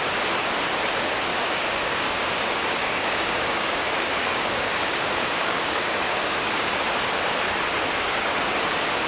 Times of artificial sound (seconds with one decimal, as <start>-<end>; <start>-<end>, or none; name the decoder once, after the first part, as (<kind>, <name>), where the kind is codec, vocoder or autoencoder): 1.3-2.2 (codec, DAC); 2.8-6.7; 7.7-8.4